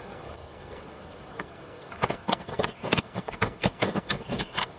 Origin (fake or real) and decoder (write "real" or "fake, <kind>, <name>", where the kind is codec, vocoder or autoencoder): fake, codec, SNAC